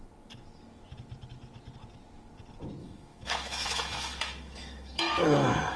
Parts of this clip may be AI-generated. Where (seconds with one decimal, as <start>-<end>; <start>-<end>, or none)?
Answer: 2.8-5.8